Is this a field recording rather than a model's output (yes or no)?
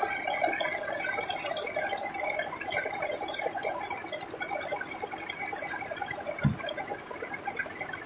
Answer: yes